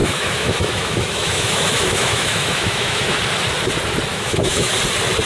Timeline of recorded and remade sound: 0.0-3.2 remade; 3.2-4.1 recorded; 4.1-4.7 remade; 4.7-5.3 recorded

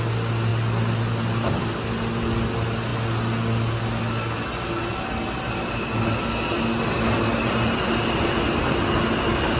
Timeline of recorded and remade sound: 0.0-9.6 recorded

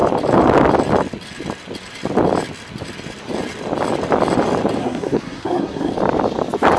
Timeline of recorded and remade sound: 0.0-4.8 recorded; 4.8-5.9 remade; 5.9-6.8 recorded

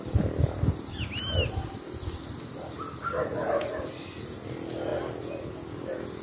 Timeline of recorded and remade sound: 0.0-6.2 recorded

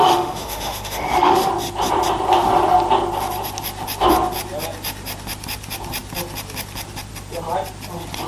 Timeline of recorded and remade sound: 0.0-1.5 remade; 1.5-8.3 recorded